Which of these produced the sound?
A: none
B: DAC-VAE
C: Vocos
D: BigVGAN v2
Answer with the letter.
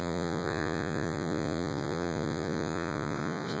C